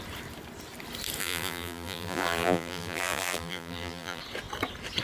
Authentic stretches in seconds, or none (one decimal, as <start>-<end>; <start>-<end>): 0.0-1.2; 4.2-5.0